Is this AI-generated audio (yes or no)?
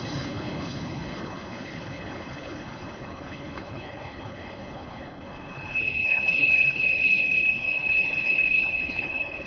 yes